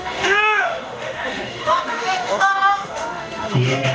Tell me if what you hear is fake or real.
fake